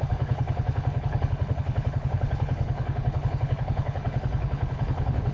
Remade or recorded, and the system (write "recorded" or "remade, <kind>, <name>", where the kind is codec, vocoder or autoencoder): remade, codec, HILCodec